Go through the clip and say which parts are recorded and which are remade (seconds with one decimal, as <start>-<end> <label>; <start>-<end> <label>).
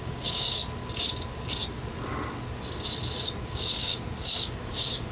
0.0-0.6 remade; 0.6-3.4 recorded; 3.4-3.9 remade; 3.9-4.4 recorded; 4.4-5.1 remade